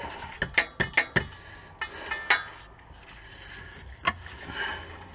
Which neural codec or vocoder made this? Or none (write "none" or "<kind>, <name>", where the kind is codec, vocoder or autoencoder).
none